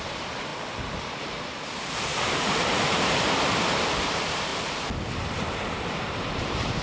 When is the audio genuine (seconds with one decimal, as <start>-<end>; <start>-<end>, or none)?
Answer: 0.5-1.2; 4.5-5.4